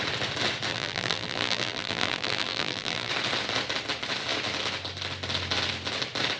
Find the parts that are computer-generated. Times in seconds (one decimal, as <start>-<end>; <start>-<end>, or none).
0.7-3.1